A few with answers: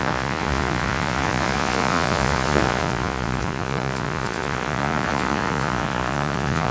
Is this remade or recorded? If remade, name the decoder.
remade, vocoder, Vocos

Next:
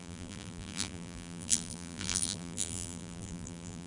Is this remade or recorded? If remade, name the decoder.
remade, vocoder, BigVGAN v2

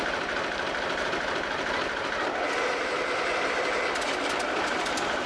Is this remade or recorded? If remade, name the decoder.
recorded